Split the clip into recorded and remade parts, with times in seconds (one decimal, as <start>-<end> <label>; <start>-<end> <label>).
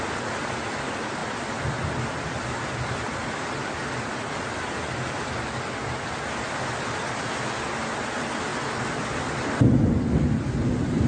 0.0-11.1 recorded